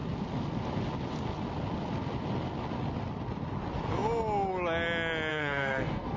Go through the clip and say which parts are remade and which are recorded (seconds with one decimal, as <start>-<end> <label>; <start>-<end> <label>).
0.0-5.3 recorded; 5.3-6.2 remade